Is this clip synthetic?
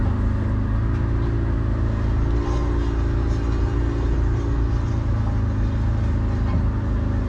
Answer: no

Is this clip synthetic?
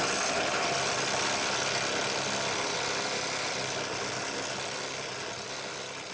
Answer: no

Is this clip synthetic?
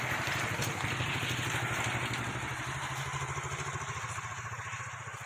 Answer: no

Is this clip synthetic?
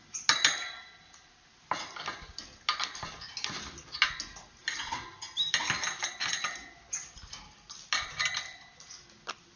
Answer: no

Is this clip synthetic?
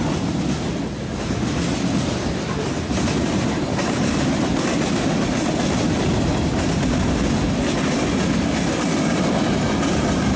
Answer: no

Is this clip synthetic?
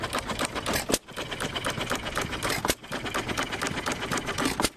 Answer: no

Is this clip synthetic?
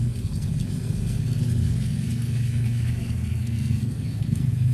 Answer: yes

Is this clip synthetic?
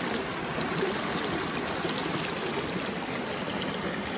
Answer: no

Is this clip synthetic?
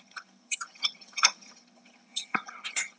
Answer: yes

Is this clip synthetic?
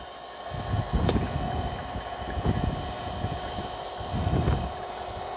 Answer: no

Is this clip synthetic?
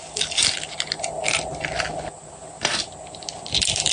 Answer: no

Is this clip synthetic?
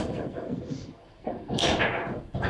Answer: yes